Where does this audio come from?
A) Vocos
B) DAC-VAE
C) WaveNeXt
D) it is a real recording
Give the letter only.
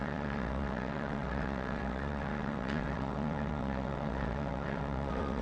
C